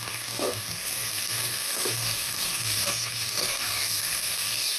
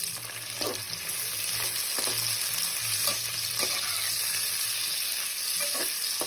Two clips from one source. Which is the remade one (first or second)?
first